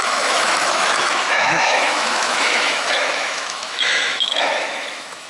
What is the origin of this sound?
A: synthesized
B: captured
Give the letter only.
A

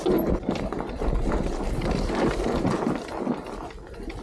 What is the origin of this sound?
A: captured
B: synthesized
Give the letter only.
A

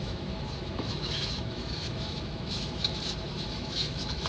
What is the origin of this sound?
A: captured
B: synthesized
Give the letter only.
B